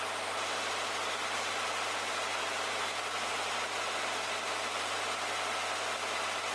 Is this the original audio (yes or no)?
yes